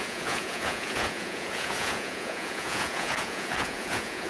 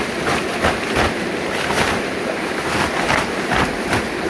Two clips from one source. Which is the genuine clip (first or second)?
second